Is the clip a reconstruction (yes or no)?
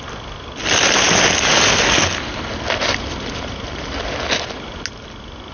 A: no